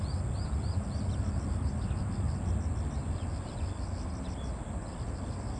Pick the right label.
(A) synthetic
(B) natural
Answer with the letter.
B